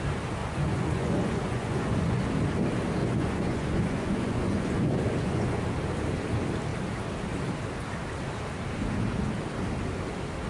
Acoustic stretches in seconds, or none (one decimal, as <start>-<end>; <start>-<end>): 0.0-0.4; 2.2-3.0; 5.6-10.5